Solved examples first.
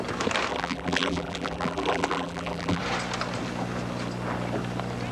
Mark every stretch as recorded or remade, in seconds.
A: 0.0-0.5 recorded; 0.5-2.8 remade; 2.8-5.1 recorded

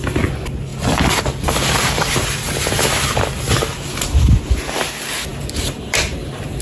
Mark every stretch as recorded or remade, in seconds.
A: 0.0-0.7 recorded; 0.7-4.0 remade; 4.0-5.3 recorded; 5.3-6.0 remade; 6.0-6.6 recorded

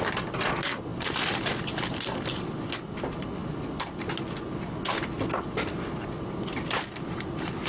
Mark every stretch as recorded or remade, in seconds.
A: 0.0-7.7 recorded

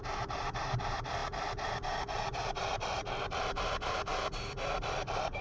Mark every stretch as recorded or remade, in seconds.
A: 0.0-4.1 remade; 4.1-4.8 recorded; 4.8-5.4 remade

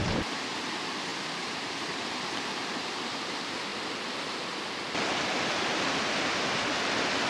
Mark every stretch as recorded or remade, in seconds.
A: 0.0-1.1 recorded; 1.1-3.0 remade; 3.0-5.3 recorded; 5.3-6.7 remade; 6.7-7.3 recorded

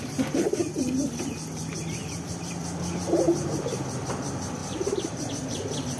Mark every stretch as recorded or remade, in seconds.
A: 0.0-2.0 recorded; 2.0-4.1 remade; 4.1-4.6 recorded; 4.6-5.3 remade; 5.3-6.0 recorded